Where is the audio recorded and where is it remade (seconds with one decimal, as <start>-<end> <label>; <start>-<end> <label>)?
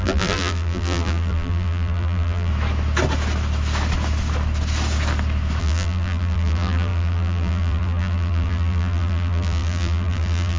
0.0-2.5 remade; 2.5-5.6 recorded; 5.6-10.6 remade